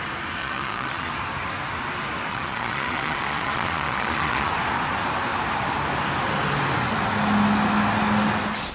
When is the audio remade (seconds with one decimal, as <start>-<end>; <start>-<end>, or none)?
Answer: 0.4-1.1; 2.3-4.5